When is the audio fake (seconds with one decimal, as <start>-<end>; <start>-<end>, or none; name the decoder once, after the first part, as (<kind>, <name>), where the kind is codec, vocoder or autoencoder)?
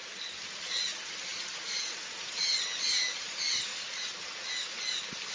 1.3-2.4 (vocoder, Vocos)